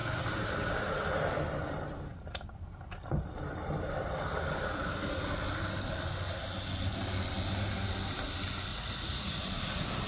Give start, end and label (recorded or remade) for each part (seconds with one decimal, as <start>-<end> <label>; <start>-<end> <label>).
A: 0.0-8.7 recorded; 8.7-9.4 remade; 9.4-10.1 recorded